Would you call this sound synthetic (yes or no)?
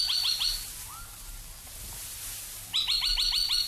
no